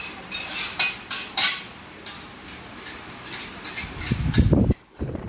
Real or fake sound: fake